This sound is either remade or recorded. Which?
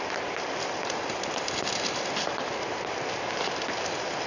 recorded